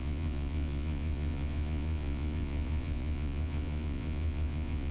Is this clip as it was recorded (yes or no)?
no